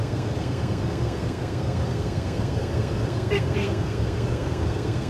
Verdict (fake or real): fake